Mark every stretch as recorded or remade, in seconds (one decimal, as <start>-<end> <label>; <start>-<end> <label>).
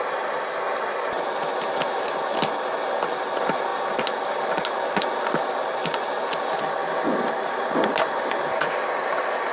0.0-9.5 recorded